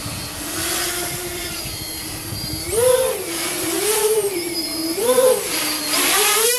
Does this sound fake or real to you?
fake